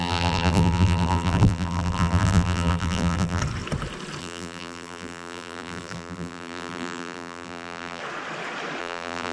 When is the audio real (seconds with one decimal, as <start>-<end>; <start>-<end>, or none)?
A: 3.4-4.2; 8.0-8.8